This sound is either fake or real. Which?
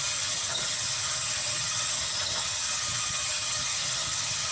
fake